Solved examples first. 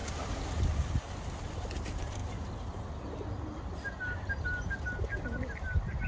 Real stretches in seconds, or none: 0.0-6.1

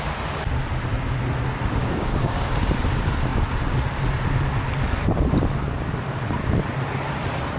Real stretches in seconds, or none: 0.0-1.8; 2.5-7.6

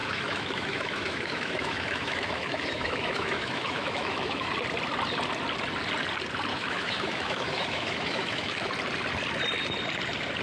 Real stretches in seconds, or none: 4.5-6.5; 8.7-10.4

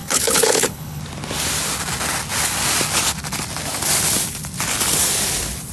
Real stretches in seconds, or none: 1.0-5.7

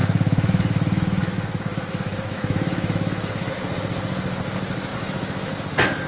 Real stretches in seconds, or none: 3.5-4.9; 5.5-6.1

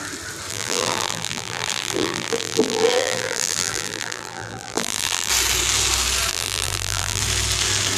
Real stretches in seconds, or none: 0.0-0.5; 5.3-6.3; 7.2-8.0

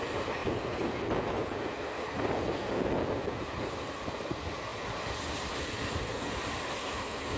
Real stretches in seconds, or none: 0.0-7.4